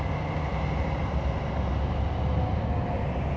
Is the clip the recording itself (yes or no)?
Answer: yes